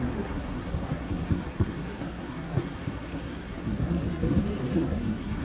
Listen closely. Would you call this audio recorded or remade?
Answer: remade